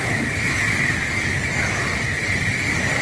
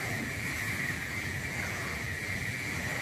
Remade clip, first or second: second